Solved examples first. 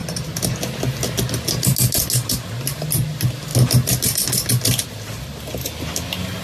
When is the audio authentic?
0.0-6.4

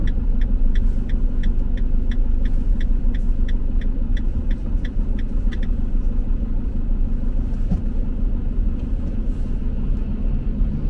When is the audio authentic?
0.0-2.7; 3.6-4.1; 9.0-10.9

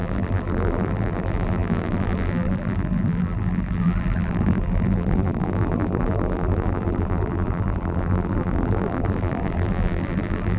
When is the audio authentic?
none

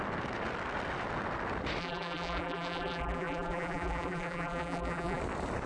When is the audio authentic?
0.0-1.8; 5.2-5.7

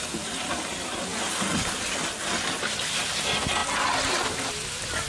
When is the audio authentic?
0.0-5.1